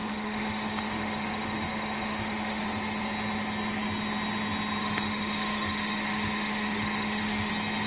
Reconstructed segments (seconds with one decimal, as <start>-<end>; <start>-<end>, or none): 0.0-2.6; 4.8-7.5

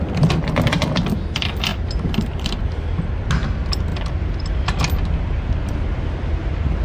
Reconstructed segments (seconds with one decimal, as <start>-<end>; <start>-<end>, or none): 1.7-2.6; 3.9-4.8